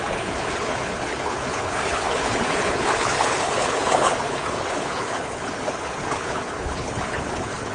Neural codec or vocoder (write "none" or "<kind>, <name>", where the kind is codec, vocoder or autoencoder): codec, HILCodec